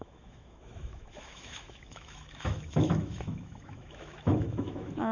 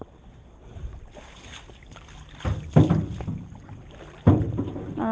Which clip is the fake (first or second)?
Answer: first